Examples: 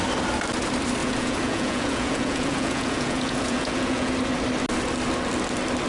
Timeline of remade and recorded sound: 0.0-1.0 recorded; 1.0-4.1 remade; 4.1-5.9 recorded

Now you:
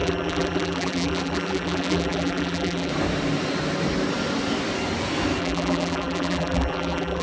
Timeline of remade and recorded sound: 0.0-2.9 remade; 2.9-5.4 recorded; 5.4-7.2 remade

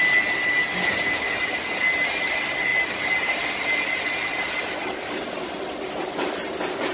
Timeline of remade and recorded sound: 0.0-6.9 recorded

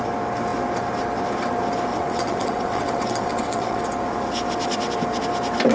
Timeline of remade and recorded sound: 0.0-1.9 recorded; 1.9-3.8 remade; 3.8-5.7 recorded

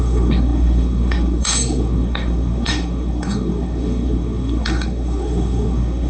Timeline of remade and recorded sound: 0.0-6.1 remade